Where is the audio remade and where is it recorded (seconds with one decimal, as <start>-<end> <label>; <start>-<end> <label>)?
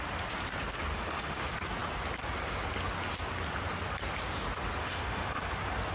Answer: 0.0-0.9 recorded; 0.9-1.4 remade; 1.4-4.8 recorded; 4.8-5.4 remade; 5.4-5.9 recorded